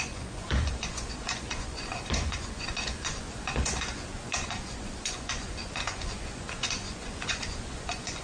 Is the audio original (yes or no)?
no